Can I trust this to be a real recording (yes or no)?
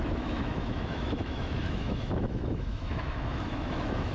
no